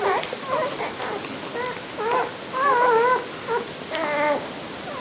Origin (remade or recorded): recorded